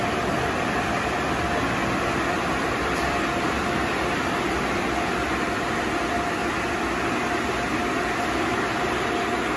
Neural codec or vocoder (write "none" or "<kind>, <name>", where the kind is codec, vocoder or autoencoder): none